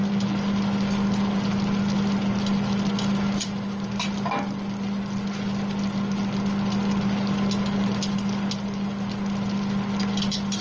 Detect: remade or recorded recorded